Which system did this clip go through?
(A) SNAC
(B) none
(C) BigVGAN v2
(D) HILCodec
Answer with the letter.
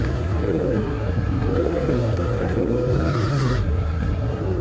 A